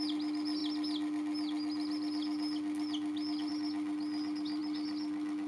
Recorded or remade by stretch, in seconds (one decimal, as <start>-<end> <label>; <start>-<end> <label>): 0.0-5.5 recorded